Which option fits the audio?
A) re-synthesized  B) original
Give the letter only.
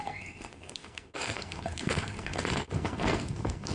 A